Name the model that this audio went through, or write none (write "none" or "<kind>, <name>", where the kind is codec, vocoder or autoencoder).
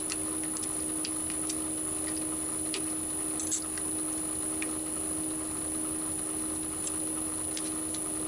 none